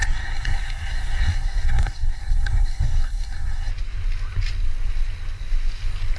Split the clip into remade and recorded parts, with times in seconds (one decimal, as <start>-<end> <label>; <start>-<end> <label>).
0.0-3.7 remade; 3.7-6.2 recorded